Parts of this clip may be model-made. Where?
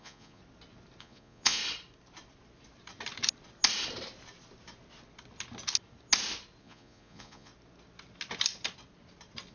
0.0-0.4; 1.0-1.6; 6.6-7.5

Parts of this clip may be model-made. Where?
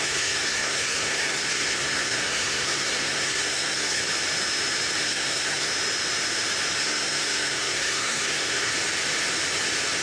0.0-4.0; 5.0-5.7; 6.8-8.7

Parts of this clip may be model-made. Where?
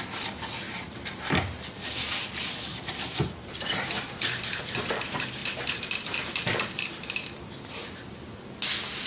2.7-4.7; 5.4-7.7